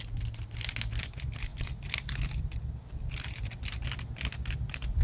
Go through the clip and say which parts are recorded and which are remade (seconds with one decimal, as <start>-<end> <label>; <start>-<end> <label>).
0.0-5.0 recorded